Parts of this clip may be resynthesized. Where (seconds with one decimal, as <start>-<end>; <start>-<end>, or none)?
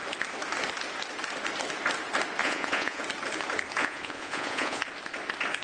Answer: 2.4-3.0; 3.8-4.8